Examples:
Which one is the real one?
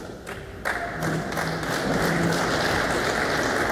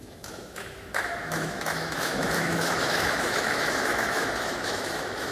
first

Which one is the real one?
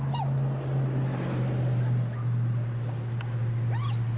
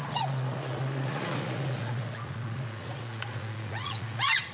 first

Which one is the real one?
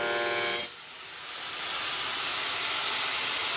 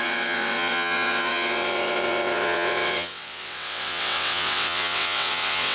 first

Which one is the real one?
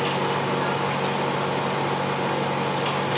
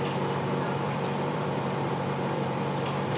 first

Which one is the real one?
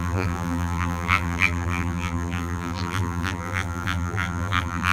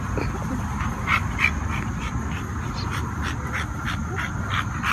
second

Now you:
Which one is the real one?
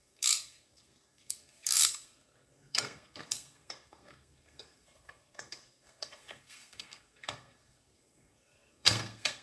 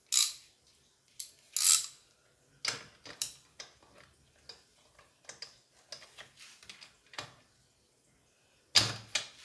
second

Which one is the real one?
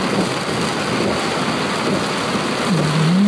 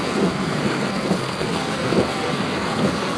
first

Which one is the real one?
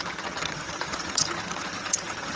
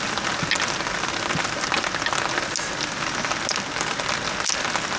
second